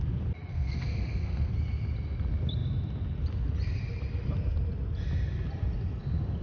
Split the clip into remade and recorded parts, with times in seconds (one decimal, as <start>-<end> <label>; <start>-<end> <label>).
0.0-0.5 recorded; 0.5-1.5 remade; 1.5-6.4 recorded